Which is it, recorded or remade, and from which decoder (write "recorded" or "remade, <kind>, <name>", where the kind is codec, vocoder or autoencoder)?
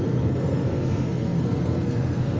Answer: remade, codec, SNAC